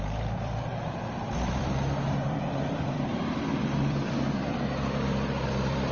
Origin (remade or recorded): remade